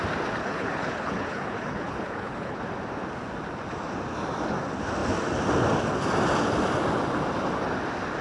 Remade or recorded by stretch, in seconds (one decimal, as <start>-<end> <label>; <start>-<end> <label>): 0.0-0.4 recorded; 0.4-2.6 remade; 2.6-8.2 recorded